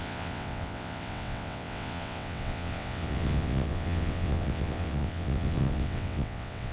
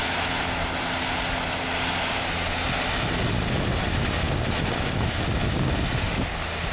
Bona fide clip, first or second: second